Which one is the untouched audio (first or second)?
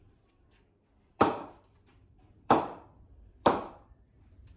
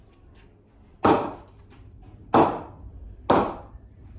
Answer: second